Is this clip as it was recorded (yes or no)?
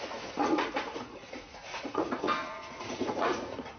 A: no